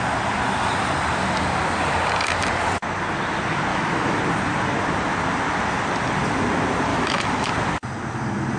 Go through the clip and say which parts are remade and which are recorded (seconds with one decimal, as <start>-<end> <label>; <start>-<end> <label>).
0.0-3.7 recorded; 3.7-4.2 remade; 4.2-6.9 recorded; 6.9-7.5 remade; 7.5-8.6 recorded